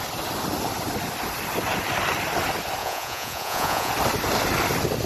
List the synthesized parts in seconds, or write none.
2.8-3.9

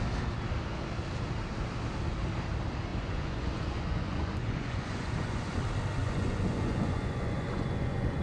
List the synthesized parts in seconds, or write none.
2.9-5.6; 6.0-8.2